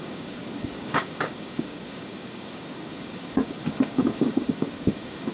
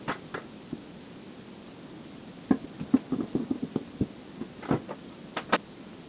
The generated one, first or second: first